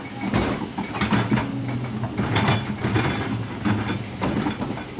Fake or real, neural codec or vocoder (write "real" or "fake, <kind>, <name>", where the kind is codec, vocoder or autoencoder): real